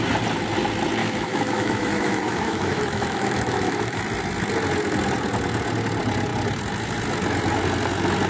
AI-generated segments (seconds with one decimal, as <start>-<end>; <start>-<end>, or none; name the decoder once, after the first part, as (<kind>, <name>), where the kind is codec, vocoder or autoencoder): 1.0-4.0 (autoencoder, DAC-VAE)